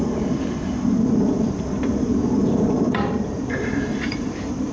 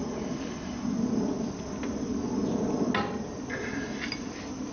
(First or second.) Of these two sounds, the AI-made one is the first